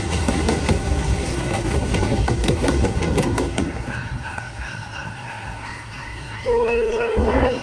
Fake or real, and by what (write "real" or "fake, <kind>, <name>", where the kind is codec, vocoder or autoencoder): fake, codec, SNAC